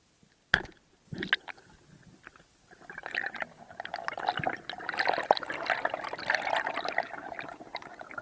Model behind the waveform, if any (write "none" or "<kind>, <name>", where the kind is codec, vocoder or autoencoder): none